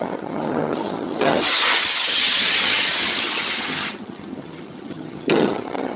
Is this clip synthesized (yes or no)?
yes